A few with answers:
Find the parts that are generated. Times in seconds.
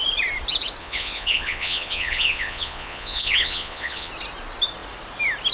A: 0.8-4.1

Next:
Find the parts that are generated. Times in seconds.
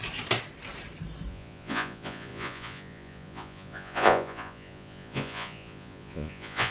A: 1.3-6.7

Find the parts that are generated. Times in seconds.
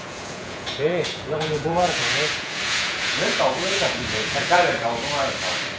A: 0.0-4.7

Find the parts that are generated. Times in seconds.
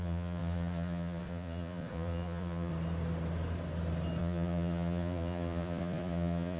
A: 0.0-2.7; 4.2-6.6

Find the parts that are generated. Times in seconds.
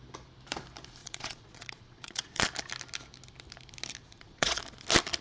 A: 1.0-2.4; 4.0-4.6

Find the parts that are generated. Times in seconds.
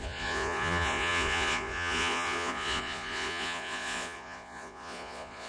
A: 0.0-5.5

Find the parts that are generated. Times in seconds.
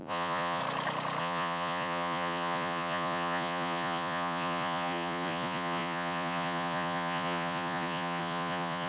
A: 0.0-0.6; 1.2-8.9